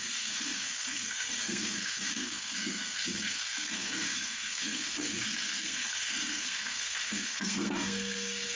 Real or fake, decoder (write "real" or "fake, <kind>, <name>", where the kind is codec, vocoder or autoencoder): fake, codec, SNAC